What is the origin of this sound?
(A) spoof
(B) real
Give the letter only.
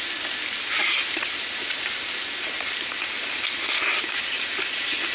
B